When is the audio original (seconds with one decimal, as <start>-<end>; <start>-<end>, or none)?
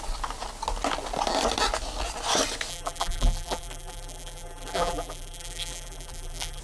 0.0-2.7